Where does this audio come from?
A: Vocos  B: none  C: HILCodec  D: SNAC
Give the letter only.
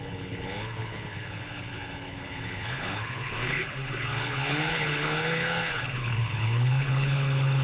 C